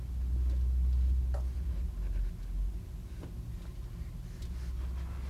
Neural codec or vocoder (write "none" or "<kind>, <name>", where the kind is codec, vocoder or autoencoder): none